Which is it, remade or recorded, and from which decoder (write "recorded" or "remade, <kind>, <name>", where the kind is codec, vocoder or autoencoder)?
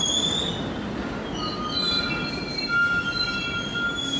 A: recorded